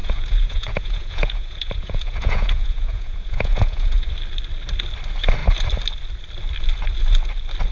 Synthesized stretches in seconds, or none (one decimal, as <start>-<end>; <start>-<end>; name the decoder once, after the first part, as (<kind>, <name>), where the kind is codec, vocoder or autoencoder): 0.0-4.1 (vocoder, Vocos)